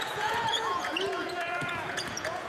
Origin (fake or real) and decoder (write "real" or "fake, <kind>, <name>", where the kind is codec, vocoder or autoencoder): fake, vocoder, Vocos